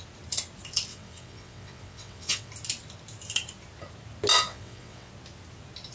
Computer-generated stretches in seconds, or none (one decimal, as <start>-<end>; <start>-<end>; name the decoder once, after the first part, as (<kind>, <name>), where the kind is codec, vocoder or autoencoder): 0.9-2.5 (vocoder, WaveNeXt); 4.3-5.1